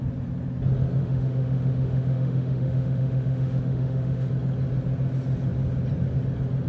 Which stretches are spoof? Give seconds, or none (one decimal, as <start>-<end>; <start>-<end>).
1.0-4.3